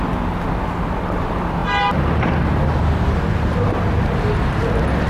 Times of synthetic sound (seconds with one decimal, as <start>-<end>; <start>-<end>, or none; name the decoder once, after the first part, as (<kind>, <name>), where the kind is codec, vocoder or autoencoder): none